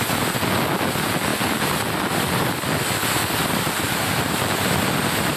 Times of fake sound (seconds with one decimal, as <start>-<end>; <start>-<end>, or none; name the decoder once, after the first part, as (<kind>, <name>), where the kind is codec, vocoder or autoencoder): 3.4-4.7 (vocoder, BigVGAN v2)